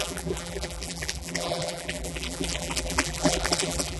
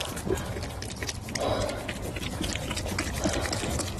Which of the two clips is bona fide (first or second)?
second